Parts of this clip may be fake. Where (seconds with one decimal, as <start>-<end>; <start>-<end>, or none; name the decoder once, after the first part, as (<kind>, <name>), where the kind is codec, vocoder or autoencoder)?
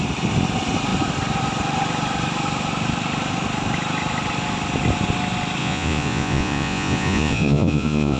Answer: 5.6-8.2 (vocoder, Vocos)